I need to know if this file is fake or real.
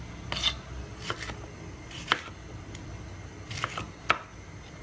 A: real